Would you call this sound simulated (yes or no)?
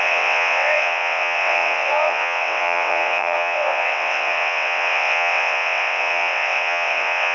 yes